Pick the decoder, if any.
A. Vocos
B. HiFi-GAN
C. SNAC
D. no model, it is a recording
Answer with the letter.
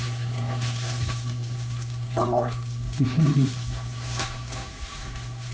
C